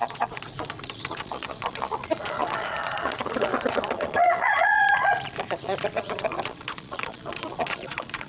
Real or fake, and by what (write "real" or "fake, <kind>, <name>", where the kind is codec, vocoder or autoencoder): fake, vocoder, Vocos